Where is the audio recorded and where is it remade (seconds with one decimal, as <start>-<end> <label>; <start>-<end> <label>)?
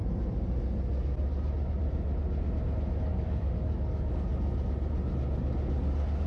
0.0-3.1 recorded; 3.1-4.1 remade; 4.1-6.3 recorded